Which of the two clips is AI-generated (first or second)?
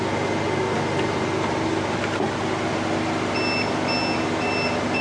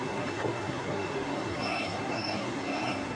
second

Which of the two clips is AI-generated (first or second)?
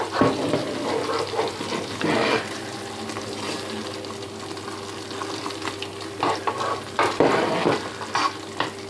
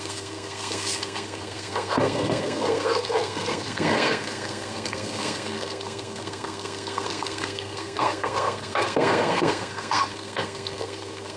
second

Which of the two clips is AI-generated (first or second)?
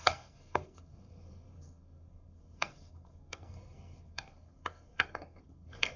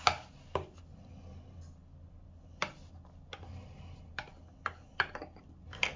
first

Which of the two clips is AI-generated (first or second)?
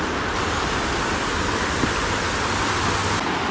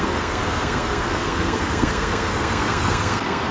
second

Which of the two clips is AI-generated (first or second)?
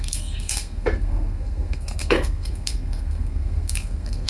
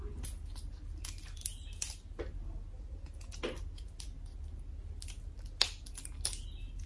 first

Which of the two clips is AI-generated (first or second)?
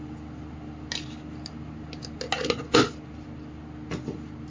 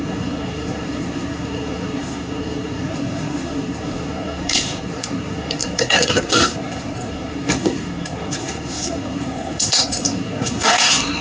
second